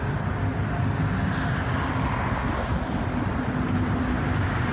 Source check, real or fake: real